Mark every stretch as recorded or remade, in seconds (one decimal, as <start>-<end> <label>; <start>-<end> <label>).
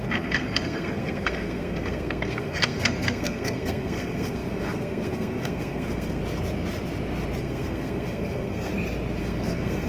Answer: 0.0-6.2 remade; 6.2-7.4 recorded; 7.4-8.7 remade; 8.7-9.2 recorded; 9.2-9.9 remade